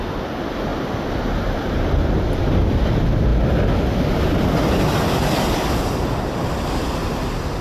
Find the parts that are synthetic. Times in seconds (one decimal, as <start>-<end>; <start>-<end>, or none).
none